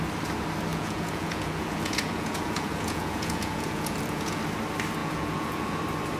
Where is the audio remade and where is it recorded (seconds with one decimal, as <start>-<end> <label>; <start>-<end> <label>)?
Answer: 0.0-0.7 recorded; 0.7-4.4 remade; 4.4-5.0 recorded; 5.0-5.8 remade; 5.8-6.2 recorded